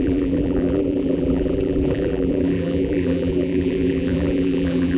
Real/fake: fake